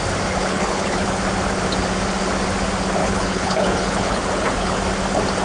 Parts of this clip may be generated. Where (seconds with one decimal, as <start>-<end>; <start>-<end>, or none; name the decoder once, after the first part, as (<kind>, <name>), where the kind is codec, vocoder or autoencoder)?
0.4-1.2 (codec, HILCodec); 3.0-4.8

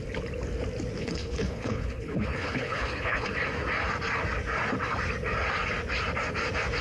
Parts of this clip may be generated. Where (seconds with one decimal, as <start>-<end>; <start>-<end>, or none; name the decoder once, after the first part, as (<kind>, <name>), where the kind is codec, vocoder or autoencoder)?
1.0-3.3 (codec, HILCodec)

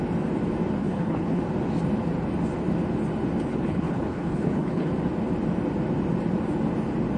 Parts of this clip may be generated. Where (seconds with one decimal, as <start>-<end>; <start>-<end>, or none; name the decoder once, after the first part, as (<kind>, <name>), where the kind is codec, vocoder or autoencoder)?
0.8-1.4 (codec, HILCodec); 3.5-4.9

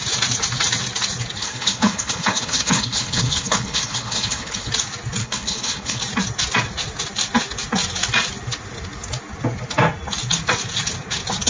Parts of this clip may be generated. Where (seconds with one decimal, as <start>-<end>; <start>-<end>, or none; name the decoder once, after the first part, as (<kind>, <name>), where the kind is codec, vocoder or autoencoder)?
1.4-4.7 (codec, HILCodec); 5.2-6.0

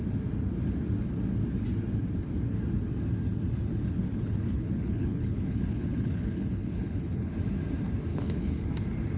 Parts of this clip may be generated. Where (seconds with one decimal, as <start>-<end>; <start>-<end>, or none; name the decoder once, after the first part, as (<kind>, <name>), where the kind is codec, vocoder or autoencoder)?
3.7-7.3 (codec, HILCodec); 8.1-8.7